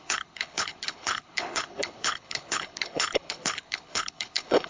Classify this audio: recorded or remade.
remade